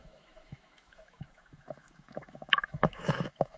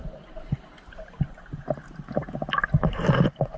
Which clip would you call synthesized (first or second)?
first